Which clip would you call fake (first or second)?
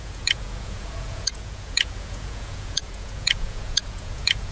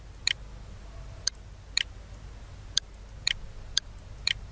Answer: first